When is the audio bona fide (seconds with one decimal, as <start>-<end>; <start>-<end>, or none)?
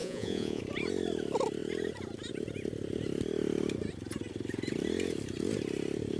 0.6-6.2